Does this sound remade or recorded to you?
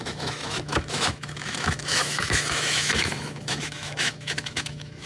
remade